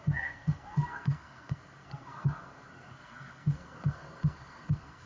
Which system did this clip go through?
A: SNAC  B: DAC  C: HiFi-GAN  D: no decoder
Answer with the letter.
A